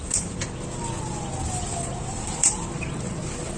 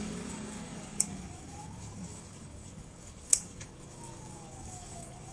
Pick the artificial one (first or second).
second